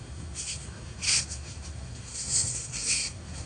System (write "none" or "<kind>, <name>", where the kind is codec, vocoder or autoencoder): codec, SNAC